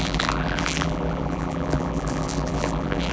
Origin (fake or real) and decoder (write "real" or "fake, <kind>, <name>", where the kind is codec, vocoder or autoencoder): fake, vocoder, BigVGAN v2